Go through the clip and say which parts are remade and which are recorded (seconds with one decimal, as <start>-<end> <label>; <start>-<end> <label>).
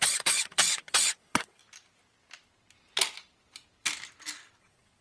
0.0-1.6 remade; 1.6-4.6 recorded; 4.6-5.0 remade